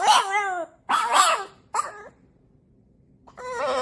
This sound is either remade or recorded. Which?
recorded